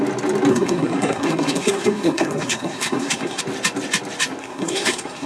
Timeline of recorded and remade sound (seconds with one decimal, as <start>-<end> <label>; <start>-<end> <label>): 0.0-0.5 recorded; 0.5-3.4 remade; 3.4-4.4 recorded; 4.4-5.3 remade